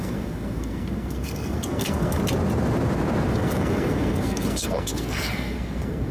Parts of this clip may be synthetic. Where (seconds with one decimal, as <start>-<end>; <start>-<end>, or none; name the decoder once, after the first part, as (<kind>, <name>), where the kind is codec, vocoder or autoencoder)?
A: 0.0-2.2 (codec, SNAC); 3.3-6.1